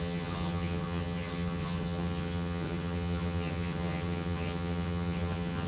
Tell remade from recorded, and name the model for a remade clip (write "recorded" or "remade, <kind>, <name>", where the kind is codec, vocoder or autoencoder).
remade, vocoder, HiFi-GAN